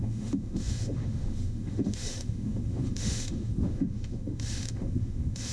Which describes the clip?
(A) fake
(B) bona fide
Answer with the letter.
A